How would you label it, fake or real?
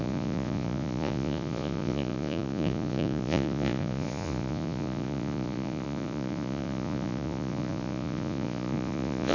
fake